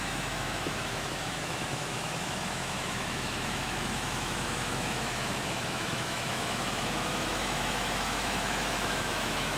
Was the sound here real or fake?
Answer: fake